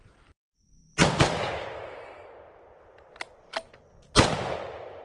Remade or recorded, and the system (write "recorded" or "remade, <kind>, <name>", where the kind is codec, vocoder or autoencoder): recorded